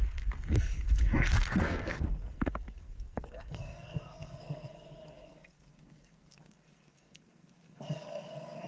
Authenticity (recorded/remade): remade